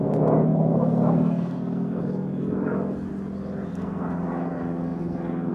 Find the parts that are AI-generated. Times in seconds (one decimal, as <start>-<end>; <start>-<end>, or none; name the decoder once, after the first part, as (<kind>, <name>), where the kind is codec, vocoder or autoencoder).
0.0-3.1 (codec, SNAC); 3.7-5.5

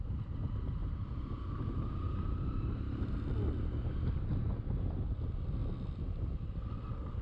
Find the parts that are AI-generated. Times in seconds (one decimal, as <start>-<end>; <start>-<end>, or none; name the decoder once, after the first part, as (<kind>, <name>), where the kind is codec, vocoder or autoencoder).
0.8-3.0 (vocoder, BigVGAN v2)

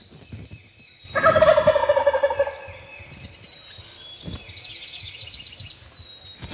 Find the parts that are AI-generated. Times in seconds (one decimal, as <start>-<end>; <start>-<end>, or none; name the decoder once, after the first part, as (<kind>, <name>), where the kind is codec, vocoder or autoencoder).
none

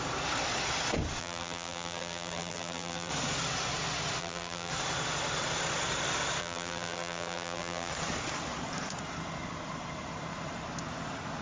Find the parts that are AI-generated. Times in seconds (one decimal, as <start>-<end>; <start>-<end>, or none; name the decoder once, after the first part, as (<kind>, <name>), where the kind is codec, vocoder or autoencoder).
1.2-3.1 (vocoder, BigVGAN v2); 4.2-4.7; 6.4-7.9

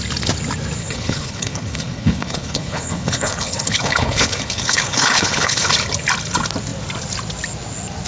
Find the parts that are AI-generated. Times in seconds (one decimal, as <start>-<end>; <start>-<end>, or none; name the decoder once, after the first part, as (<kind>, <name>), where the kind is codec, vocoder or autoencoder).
0.8-5.7 (codec, HILCodec)

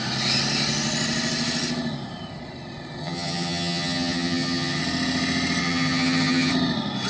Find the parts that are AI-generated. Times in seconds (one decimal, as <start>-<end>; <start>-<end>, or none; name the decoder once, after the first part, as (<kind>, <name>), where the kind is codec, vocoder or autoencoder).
3.0-4.8 (vocoder, HiFi-GAN); 5.6-6.5

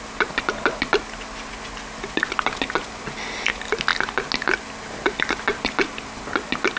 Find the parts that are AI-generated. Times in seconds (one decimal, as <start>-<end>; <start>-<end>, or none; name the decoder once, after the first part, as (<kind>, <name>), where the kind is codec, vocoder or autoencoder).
none